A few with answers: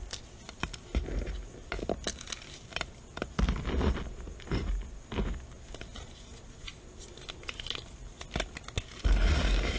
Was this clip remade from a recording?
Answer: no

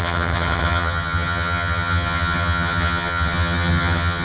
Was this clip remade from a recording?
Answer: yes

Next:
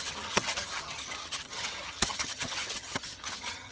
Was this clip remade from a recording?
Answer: yes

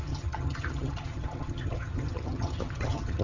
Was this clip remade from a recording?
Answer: yes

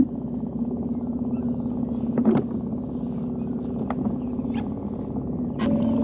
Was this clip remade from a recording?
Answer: no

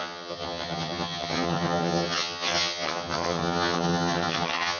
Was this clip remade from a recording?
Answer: yes